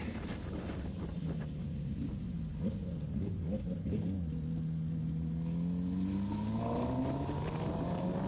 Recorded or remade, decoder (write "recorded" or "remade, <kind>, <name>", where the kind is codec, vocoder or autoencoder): recorded